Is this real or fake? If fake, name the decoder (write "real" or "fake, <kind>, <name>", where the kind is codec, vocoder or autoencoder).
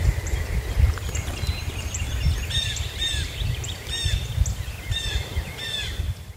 fake, vocoder, BigVGAN v2